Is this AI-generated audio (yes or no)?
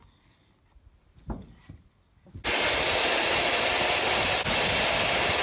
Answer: no